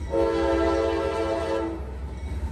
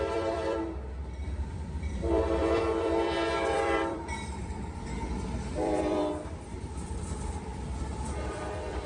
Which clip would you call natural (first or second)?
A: first